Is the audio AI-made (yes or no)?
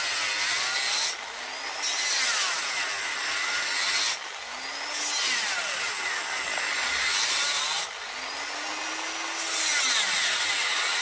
no